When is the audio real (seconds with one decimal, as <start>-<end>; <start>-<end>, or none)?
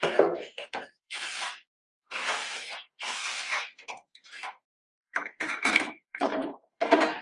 none